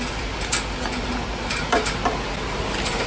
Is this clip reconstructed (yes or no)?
no